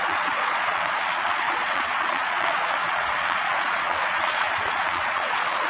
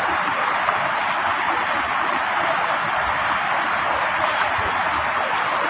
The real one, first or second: second